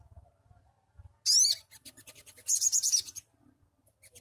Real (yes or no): yes